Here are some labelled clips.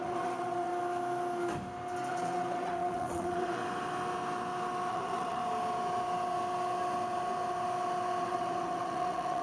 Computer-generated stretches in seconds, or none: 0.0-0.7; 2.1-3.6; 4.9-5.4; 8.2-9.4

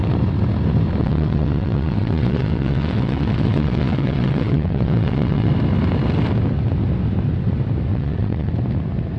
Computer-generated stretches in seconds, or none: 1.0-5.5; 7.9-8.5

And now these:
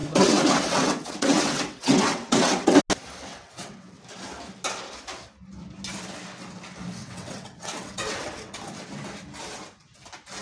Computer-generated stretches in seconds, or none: 0.0-2.8; 3.3-4.0; 7.0-8.5

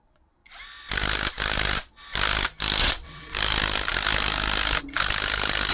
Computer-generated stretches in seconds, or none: 0.0-0.4; 2.8-3.3